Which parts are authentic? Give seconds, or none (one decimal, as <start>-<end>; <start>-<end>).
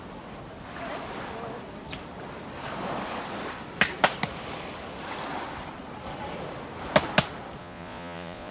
0.0-7.6